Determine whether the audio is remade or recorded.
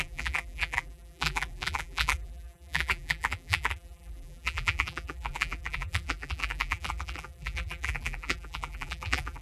remade